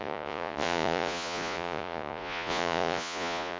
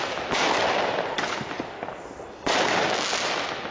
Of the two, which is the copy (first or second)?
first